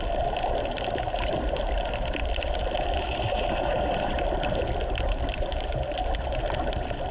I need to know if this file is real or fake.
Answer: real